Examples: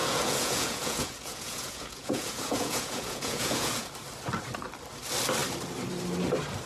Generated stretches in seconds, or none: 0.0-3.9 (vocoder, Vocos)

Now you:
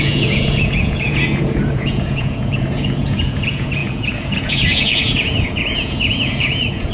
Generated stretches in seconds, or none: 0.0-6.9 (vocoder, Vocos)

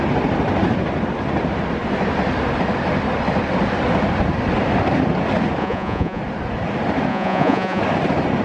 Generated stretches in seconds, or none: 5.6-6.2 (vocoder, Vocos); 7.1-7.8

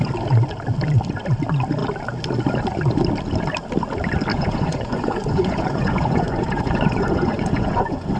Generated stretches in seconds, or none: 4.3-8.2 (vocoder, Vocos)

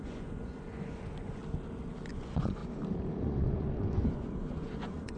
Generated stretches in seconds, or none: 0.0-1.4 (vocoder, Vocos); 2.1-2.6; 3.2-5.2

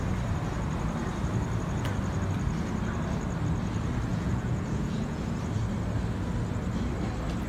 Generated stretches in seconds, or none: 4.1-5.2 (vocoder, Vocos)